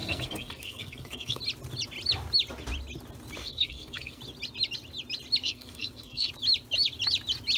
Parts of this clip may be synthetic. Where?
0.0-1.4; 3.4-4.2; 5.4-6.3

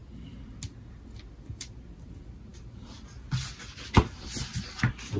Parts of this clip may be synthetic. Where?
none